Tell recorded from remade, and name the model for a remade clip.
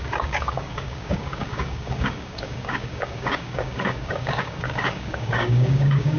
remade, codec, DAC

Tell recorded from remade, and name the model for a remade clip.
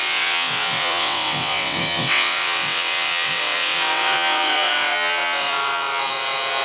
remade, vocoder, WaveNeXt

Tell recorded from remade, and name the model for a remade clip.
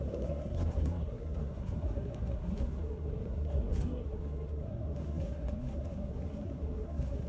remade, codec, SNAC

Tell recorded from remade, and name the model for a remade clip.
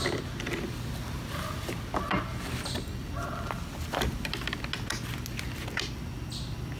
recorded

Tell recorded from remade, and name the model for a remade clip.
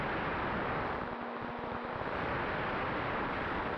recorded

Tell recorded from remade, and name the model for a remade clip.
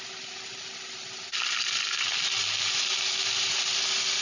recorded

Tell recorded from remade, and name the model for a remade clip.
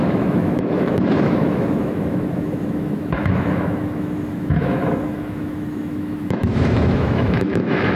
remade, autoencoder, DAC-VAE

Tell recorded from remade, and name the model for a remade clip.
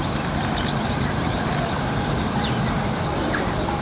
recorded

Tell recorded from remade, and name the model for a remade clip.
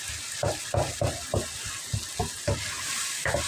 recorded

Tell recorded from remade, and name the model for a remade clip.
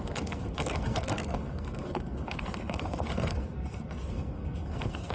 remade, codec, SNAC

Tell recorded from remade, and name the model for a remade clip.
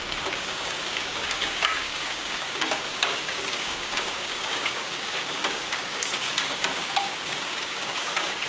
remade, codec, DAC